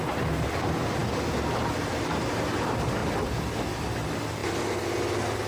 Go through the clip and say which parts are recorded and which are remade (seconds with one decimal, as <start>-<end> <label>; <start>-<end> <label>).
0.0-5.5 recorded